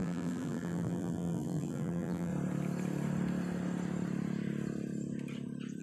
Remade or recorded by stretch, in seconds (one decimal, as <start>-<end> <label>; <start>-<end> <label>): 0.0-2.3 remade; 2.3-5.8 recorded

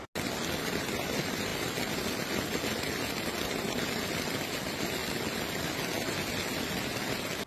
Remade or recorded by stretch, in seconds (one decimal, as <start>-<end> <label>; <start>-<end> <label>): 0.0-7.5 recorded